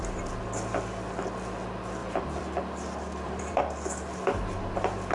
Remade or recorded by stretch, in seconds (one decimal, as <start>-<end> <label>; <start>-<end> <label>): 0.0-2.0 recorded; 2.0-3.6 remade; 3.6-5.1 recorded